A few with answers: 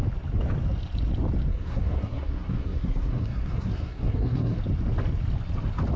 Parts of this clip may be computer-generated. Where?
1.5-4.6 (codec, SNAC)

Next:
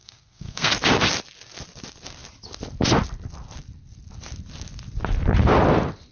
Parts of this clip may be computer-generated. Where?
0.0-0.7 (codec, SNAC)

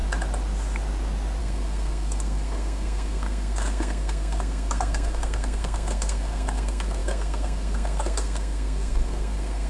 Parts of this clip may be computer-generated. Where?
1.4-9.7 (codec, SNAC)

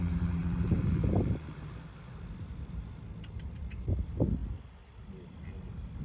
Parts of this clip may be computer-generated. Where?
none

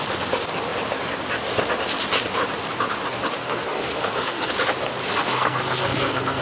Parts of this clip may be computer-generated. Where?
3.4-4.5 (codec, SNAC); 5.2-6.4

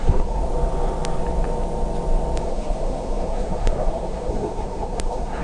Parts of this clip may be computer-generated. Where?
0.0-0.4 (codec, SNAC); 2.4-5.4

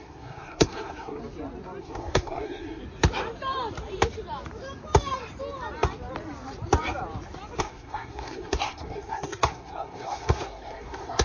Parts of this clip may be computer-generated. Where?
0.0-1.2 (codec, SNAC); 1.8-2.8; 7.6-11.2